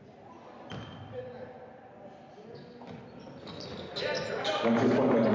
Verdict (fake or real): real